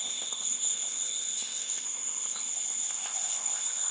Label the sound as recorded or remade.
remade